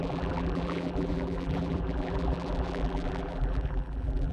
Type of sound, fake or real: fake